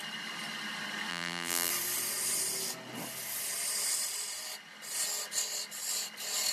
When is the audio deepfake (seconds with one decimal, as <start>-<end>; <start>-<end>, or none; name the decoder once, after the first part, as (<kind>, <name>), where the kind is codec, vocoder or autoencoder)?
1.1-1.7 (vocoder, BigVGAN v2)